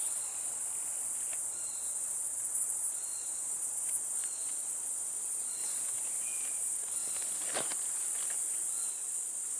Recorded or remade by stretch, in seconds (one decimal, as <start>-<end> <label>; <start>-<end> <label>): 0.0-0.6 remade; 0.6-1.5 recorded; 1.5-5.6 remade; 5.6-6.6 recorded; 6.6-7.0 remade; 7.0-8.9 recorded; 8.9-9.6 remade